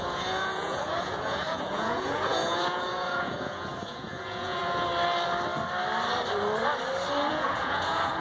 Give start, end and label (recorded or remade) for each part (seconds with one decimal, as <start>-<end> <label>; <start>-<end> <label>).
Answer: 0.0-4.9 remade; 4.9-7.3 recorded; 7.3-8.2 remade